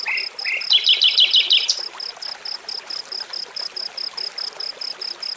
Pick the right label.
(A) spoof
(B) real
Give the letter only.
B